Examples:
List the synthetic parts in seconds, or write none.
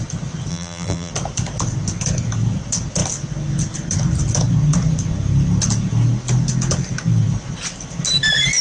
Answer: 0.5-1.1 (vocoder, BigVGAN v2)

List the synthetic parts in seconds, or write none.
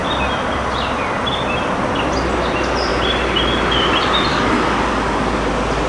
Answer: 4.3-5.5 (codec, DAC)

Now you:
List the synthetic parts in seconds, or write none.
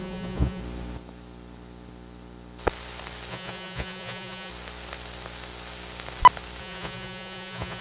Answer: 0.0-0.6 (vocoder, Vocos); 3.3-4.5; 6.6-7.8